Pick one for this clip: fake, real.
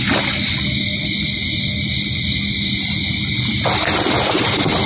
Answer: real